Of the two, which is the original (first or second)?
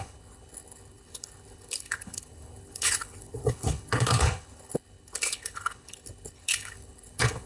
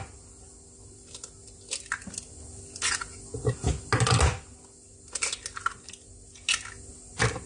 second